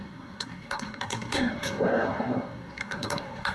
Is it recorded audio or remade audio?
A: remade